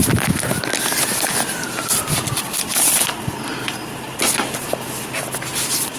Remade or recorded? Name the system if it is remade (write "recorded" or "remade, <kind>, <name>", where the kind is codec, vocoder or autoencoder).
recorded